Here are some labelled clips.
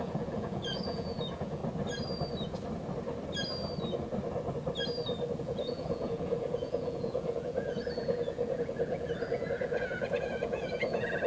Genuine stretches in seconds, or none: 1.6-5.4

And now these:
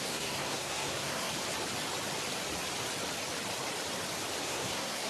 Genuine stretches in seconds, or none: 1.3-4.4

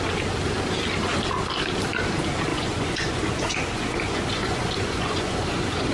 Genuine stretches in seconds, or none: 0.0-2.5